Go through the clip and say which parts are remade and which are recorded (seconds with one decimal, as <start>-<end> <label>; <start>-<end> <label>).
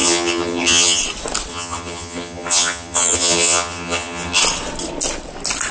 0.0-1.0 remade; 1.0-1.5 recorded; 1.5-4.4 remade; 4.4-5.7 recorded